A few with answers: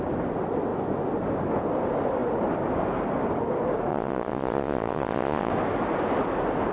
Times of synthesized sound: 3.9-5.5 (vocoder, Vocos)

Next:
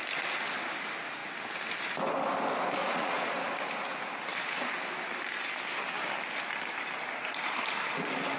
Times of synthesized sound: 2.8-3.4 (vocoder, Vocos)